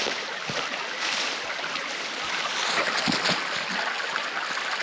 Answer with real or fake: real